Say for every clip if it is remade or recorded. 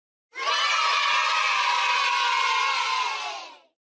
recorded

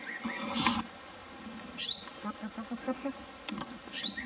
recorded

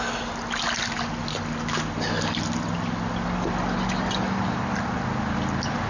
recorded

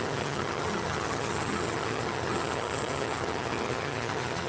remade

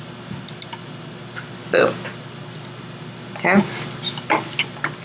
recorded